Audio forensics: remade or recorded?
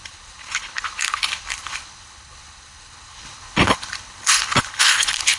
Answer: remade